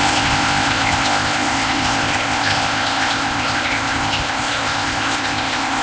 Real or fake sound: fake